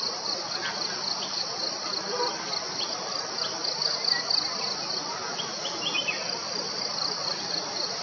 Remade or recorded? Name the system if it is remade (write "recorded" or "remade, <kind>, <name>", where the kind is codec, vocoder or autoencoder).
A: recorded